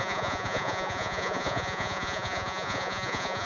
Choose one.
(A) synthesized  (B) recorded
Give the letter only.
A